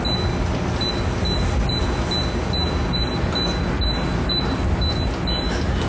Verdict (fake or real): real